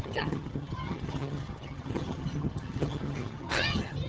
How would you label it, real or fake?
fake